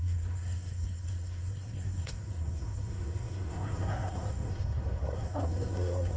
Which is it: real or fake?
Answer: fake